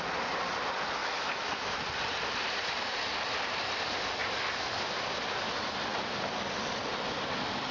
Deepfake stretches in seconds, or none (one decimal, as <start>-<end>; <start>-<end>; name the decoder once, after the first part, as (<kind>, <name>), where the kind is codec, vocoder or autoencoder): 1.0-1.8 (autoencoder, DAC-VAE)